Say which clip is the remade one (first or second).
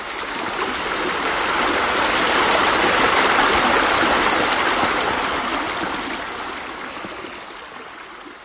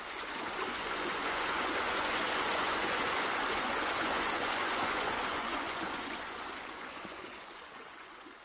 second